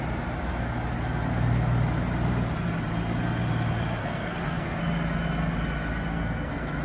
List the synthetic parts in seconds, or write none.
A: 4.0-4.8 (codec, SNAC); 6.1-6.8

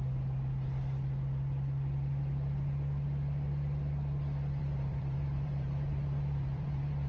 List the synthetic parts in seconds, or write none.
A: 4.6-7.1 (vocoder, BigVGAN v2)

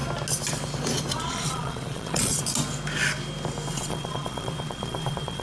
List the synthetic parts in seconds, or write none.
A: 1.2-2.3 (vocoder, Vocos); 3.7-5.4

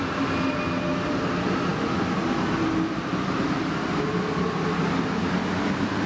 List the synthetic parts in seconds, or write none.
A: none

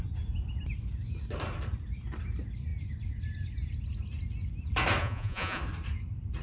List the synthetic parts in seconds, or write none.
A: 5.0-5.6 (vocoder, Vocos)